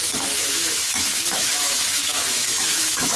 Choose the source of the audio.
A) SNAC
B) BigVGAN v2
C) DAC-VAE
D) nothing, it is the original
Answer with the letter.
C